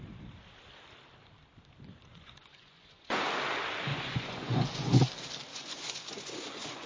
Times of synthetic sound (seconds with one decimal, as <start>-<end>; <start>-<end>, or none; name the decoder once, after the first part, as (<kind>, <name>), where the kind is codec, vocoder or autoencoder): 2.1-3.3 (vocoder, Vocos); 3.9-5.0; 5.5-6.9